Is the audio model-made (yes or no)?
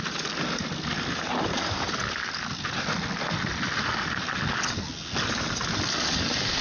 no